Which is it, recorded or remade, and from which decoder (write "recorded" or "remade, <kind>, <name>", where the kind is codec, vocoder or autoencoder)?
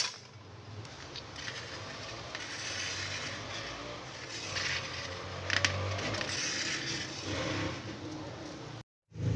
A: recorded